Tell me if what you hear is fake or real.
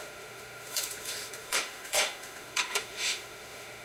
fake